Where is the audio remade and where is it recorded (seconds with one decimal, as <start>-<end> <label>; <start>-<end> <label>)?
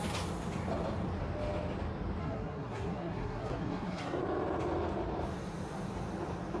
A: 0.0-2.2 recorded; 2.2-4.2 remade; 4.2-6.6 recorded